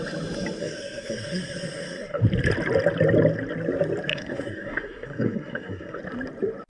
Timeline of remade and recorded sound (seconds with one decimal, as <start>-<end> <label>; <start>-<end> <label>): 0.0-0.6 recorded; 0.6-2.2 remade; 2.2-4.1 recorded; 4.1-6.0 remade; 6.0-6.7 recorded